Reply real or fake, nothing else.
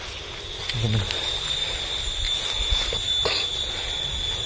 real